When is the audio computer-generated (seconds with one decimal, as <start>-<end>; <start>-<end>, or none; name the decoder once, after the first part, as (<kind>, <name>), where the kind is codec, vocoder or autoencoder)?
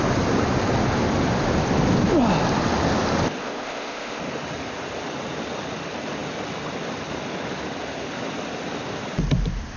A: 3.4-4.2 (codec, ZipCodec)